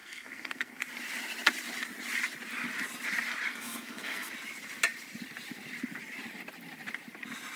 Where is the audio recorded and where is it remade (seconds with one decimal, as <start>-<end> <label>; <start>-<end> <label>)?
0.0-0.8 remade; 0.8-3.5 recorded; 3.5-4.3 remade; 4.3-7.6 recorded